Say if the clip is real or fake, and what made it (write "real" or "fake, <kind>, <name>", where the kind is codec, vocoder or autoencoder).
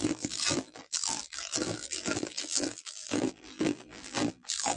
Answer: fake, vocoder, BigVGAN v2